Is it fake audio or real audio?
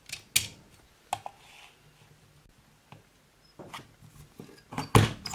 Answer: real